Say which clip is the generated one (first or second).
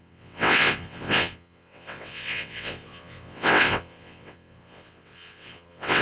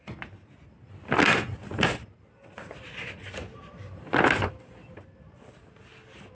first